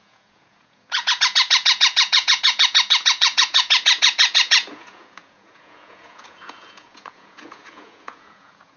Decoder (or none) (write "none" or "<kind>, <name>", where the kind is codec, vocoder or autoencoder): vocoder, Vocos